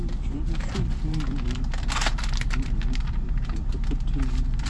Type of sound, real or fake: fake